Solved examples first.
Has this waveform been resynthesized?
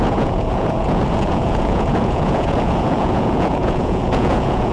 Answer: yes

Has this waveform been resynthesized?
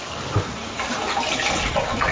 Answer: no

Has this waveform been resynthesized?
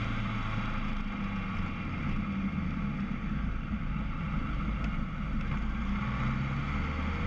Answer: no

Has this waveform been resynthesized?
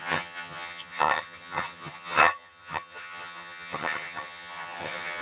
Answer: yes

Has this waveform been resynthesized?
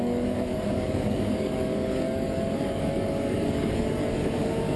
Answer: yes